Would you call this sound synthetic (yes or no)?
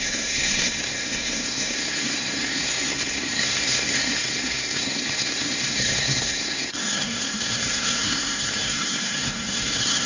yes